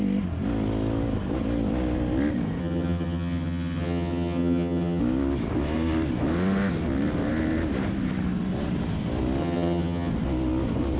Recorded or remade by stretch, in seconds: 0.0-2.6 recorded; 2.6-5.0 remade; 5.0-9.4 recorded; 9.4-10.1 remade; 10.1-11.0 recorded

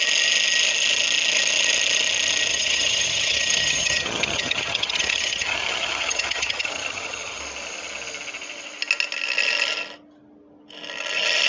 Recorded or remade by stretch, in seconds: 0.0-2.5 recorded; 2.5-7.4 remade; 7.4-11.5 recorded

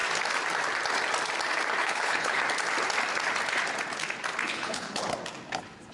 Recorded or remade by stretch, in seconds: 0.0-1.8 recorded; 1.8-2.4 remade; 2.4-4.4 recorded; 4.4-5.0 remade; 5.0-5.9 recorded